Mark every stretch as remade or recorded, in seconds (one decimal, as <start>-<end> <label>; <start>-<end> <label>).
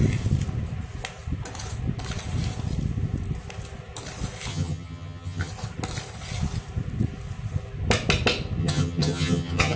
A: 0.0-4.5 recorded; 4.5-5.5 remade; 5.5-8.6 recorded; 8.6-9.8 remade